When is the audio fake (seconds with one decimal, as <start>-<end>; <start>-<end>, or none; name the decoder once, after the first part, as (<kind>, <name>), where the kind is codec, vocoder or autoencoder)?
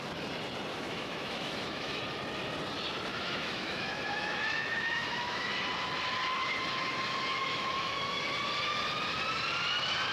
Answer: 0.7-2.0 (autoencoder, DAC-VAE); 3.1-5.5; 7.4-8.2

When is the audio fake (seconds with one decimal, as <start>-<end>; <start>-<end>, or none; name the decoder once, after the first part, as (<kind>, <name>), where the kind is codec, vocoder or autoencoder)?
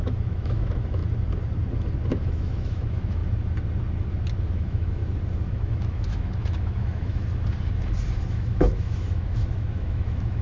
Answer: 0.0-1.0 (autoencoder, DAC-VAE); 2.1-3.2; 4.5-5.0; 5.5-7.2; 8.2-10.4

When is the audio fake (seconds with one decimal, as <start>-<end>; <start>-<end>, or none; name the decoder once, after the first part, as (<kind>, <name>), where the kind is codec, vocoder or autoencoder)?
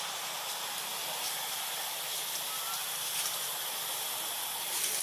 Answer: none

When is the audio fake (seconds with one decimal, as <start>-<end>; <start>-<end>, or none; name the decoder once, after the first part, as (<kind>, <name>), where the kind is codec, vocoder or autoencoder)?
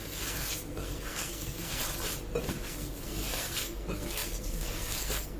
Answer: 0.0-1.8 (codec, SNAC); 2.4-5.4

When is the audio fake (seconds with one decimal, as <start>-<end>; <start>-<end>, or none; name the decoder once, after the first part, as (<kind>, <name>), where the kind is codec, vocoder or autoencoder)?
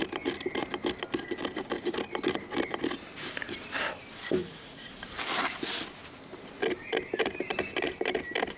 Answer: 4.4-4.9 (vocoder, Vocos)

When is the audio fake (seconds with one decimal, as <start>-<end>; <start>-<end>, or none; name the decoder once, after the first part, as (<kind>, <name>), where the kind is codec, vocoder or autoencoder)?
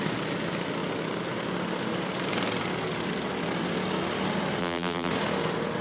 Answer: 4.6-5.1 (vocoder, BigVGAN v2)